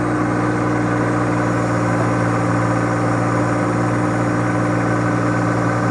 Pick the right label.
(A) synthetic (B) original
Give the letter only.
B